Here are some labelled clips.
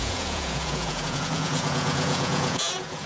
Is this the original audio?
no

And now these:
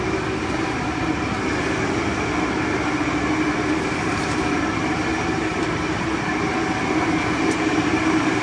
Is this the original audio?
no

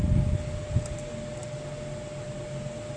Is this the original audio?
yes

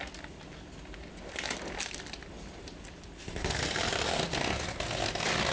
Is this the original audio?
yes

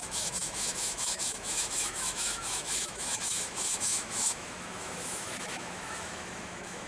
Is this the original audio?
no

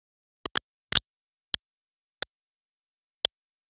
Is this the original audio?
yes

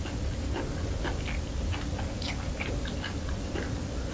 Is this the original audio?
yes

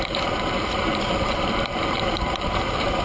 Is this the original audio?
no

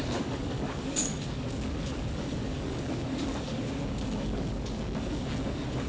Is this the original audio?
no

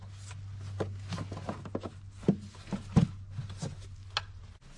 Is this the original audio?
yes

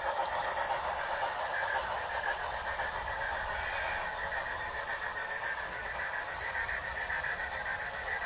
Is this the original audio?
yes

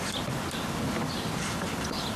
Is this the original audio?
yes